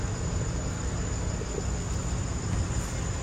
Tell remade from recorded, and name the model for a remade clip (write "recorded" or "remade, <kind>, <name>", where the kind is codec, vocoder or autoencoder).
recorded